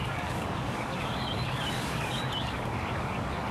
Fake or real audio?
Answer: fake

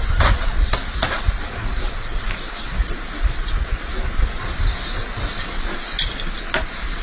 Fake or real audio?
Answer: real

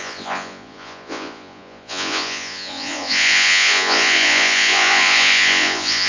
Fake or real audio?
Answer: fake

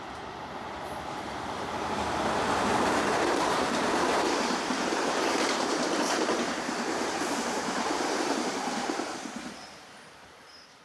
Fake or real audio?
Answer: fake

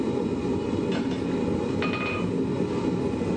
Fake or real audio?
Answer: real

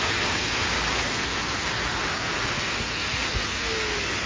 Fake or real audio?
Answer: real